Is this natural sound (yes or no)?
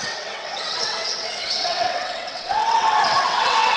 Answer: no